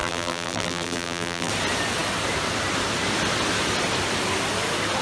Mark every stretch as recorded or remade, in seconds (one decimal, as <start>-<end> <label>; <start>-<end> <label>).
0.0-1.5 remade; 1.5-5.0 recorded